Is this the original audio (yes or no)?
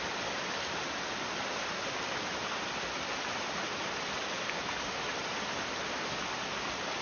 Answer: yes